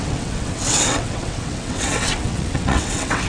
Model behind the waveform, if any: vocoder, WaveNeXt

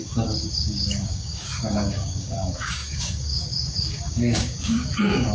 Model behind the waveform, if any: codec, DAC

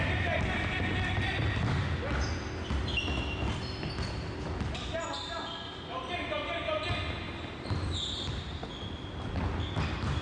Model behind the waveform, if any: none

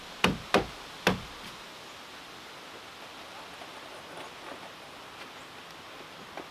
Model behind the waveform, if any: none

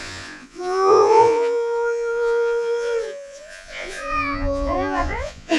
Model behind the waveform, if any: vocoder, Vocos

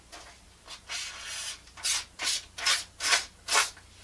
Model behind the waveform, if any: none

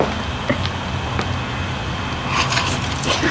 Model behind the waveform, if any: none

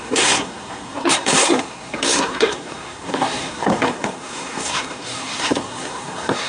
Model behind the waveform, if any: codec, SNAC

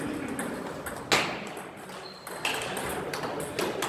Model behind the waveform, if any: none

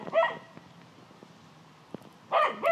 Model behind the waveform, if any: none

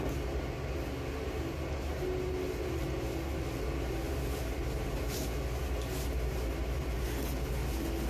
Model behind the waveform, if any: none